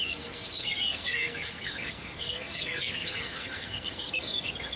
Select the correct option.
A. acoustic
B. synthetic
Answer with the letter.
B